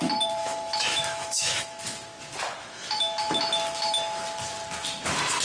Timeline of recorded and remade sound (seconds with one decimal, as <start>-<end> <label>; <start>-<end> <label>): 0.0-0.4 recorded; 0.4-1.8 remade; 1.8-2.6 recorded; 2.6-3.4 remade; 3.4-5.4 recorded